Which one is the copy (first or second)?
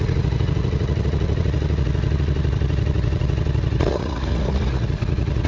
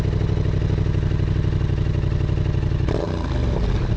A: first